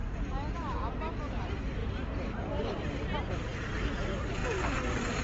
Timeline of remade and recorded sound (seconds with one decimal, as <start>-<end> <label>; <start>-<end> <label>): 0.0-1.4 recorded; 1.4-1.8 remade; 1.8-2.6 recorded; 2.6-4.4 remade; 4.4-5.2 recorded